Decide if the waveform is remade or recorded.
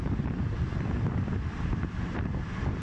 recorded